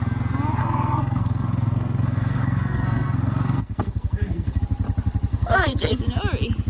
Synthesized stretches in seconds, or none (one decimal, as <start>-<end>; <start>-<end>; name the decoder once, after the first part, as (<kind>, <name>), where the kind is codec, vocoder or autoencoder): 0.6-4.6 (codec, SNAC); 5.3-6.0